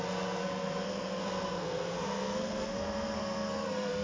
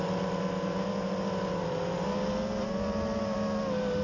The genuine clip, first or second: second